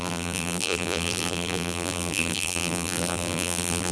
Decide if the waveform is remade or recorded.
remade